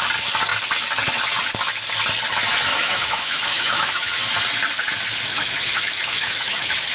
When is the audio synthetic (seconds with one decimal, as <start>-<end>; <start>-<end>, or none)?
2.7-4.2; 5.3-6.9